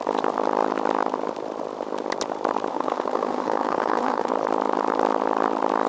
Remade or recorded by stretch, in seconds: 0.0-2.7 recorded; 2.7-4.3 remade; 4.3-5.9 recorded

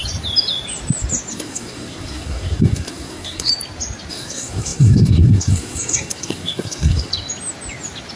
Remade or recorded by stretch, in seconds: 0.0-1.3 recorded; 1.3-3.5 remade; 3.5-4.1 recorded; 4.1-7.1 remade; 7.1-8.2 recorded

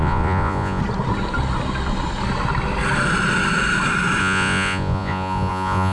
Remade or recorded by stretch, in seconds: 0.0-0.8 remade; 0.8-4.2 recorded; 4.2-5.9 remade

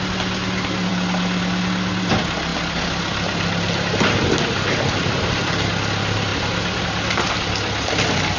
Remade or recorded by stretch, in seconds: 0.0-8.4 recorded